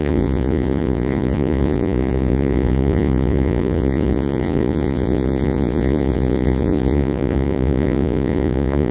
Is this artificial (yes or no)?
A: yes